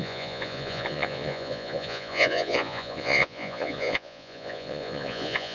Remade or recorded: remade